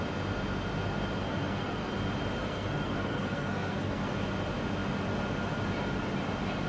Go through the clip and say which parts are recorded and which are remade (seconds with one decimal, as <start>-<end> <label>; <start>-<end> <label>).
0.0-1.2 recorded; 1.2-1.9 remade; 1.9-2.4 recorded; 2.4-4.1 remade; 4.1-6.7 recorded